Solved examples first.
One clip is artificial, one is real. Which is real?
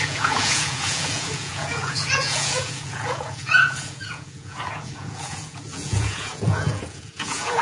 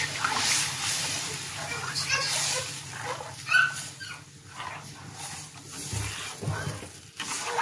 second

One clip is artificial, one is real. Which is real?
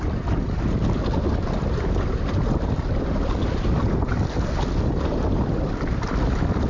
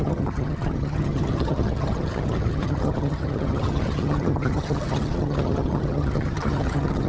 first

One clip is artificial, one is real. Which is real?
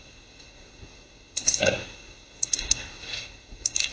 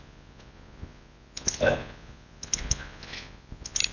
second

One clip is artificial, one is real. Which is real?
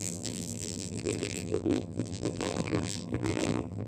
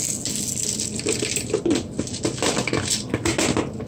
second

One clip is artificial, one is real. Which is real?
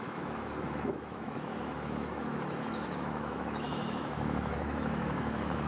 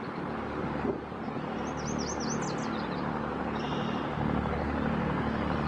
second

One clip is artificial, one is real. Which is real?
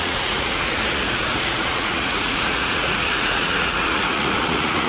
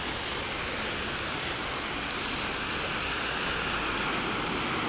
second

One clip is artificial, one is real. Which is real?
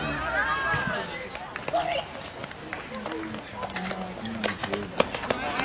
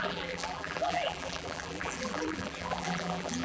first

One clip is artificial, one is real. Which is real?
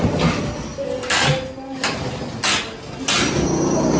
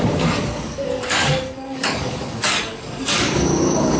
first